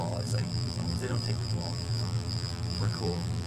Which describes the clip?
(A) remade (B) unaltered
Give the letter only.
A